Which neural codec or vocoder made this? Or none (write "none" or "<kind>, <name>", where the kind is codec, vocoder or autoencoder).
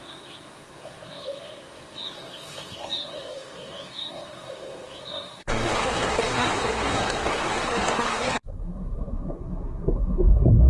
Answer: codec, SNAC